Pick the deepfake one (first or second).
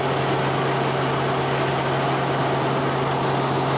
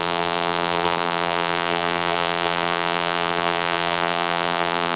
second